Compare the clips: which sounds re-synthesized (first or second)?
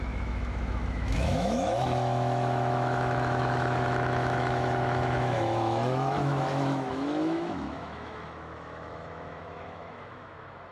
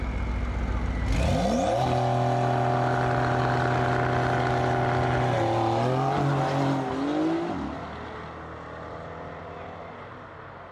first